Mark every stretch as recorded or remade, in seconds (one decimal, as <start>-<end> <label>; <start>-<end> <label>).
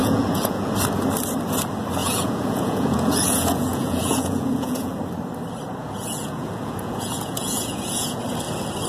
0.0-0.7 remade; 0.7-2.0 recorded; 2.0-5.0 remade; 5.0-5.8 recorded; 5.8-8.2 remade; 8.2-8.9 recorded